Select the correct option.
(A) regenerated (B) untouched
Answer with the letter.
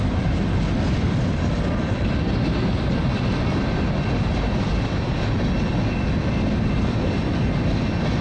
B